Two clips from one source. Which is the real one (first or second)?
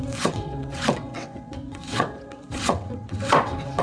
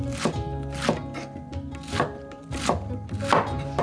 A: second